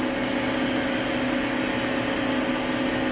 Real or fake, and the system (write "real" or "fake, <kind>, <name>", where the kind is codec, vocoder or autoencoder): real